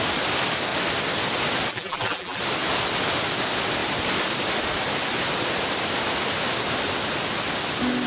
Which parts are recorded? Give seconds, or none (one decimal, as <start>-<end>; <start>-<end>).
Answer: 0.0-1.7; 2.4-8.1